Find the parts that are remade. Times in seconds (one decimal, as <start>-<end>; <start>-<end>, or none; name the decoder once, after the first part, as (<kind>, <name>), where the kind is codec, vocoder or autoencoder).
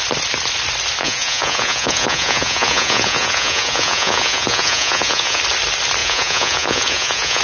1.0-5.4 (vocoder, Vocos); 6.0-7.4